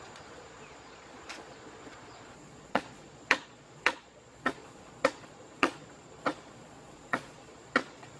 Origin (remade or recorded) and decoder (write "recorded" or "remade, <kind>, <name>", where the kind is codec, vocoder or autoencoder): remade, vocoder, Vocos